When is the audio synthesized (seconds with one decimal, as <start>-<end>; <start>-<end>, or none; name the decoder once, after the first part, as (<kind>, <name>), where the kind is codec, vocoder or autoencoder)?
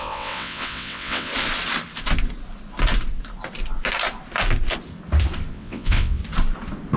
0.0-1.3 (vocoder, WaveNeXt); 5.5-6.2